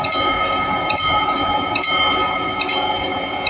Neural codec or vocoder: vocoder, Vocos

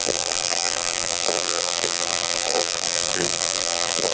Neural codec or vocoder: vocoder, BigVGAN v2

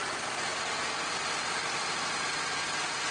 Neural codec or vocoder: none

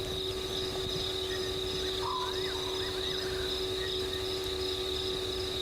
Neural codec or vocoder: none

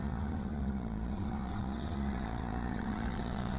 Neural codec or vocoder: vocoder, Vocos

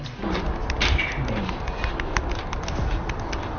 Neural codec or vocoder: none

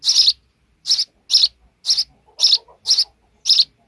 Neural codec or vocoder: none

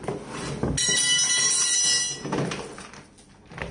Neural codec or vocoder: none